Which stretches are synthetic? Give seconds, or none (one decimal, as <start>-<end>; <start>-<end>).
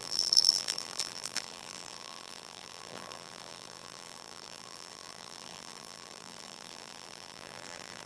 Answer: 0.0-8.1